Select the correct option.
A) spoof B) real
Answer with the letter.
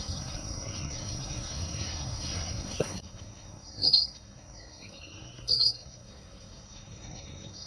A